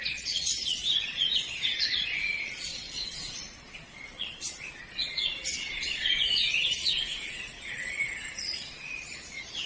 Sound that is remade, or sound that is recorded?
remade